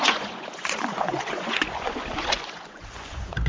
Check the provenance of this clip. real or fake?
fake